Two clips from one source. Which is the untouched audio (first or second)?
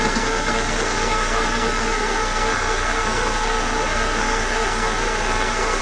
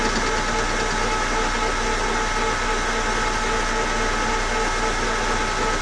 second